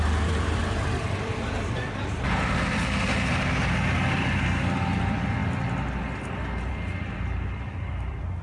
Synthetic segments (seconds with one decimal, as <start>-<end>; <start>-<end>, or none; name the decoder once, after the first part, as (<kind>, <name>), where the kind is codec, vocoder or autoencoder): 0.0-5.4 (vocoder, BigVGAN v2); 6.7-8.4